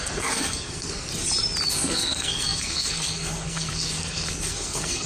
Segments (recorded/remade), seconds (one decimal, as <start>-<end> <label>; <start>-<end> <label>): 0.0-1.1 remade; 1.1-1.7 recorded; 1.7-5.1 remade